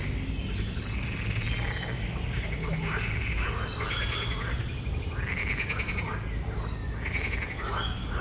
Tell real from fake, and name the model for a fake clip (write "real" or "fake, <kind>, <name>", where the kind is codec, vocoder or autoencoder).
real